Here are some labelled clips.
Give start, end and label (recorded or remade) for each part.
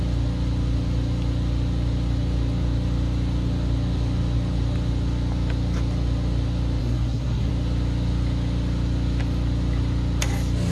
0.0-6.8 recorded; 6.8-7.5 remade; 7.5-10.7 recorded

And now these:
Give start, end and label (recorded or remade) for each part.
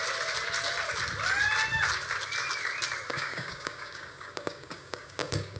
0.0-3.1 recorded; 3.1-5.6 remade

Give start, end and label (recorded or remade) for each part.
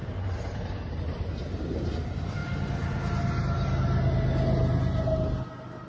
0.0-1.5 recorded; 1.5-2.4 remade; 2.4-5.9 recorded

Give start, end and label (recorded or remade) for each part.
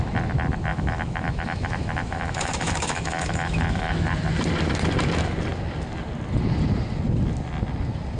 0.0-0.7 recorded; 0.7-3.9 remade; 3.9-8.2 recorded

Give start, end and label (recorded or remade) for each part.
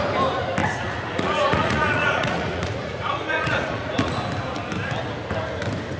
0.0-0.6 recorded; 0.6-4.2 remade; 4.2-6.0 recorded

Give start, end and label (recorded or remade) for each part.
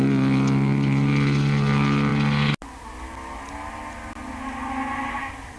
0.0-5.6 recorded